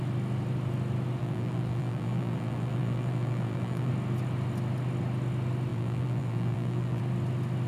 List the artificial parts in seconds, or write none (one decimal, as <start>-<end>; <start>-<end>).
1.2-3.9; 5.7-7.0